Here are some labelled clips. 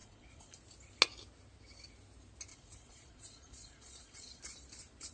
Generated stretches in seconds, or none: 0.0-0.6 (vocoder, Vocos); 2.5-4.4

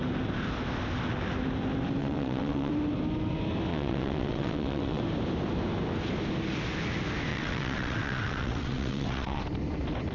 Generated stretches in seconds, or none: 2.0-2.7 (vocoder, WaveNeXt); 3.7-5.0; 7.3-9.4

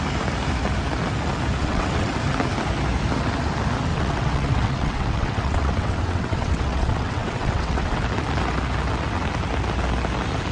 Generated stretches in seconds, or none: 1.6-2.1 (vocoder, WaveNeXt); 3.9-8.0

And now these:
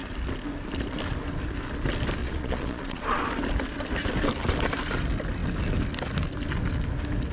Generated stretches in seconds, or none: 2.2-3.2 (vocoder, Vocos)

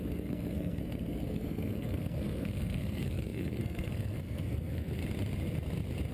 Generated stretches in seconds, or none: 0.0-5.0 (codec, SNAC)

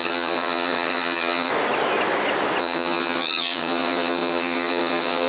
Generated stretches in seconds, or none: 0.0-1.5 (vocoder, HiFi-GAN); 2.6-5.3

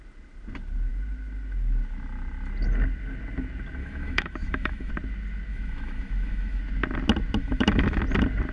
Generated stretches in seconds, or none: 3.8-4.9 (autoencoder, DAC-VAE); 5.5-6.6; 7.4-8.0

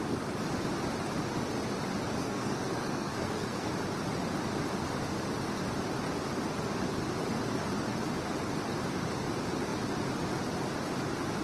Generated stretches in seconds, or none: 2.2-3.7 (codec, SNAC)